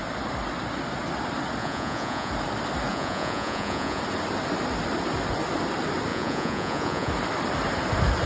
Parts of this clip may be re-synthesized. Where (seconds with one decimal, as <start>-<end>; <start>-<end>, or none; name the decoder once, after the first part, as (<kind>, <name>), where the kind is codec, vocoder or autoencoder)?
1.6-2.3 (vocoder, Vocos); 2.9-4.0; 6.1-7.1